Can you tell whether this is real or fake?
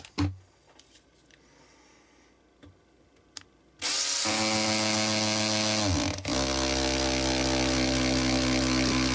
real